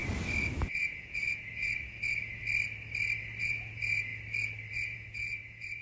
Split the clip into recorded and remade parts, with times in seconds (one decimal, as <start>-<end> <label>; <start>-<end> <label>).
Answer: 0.0-0.6 recorded; 0.6-2.4 remade; 2.4-3.4 recorded; 3.4-4.1 remade; 4.1-4.7 recorded; 4.7-5.8 remade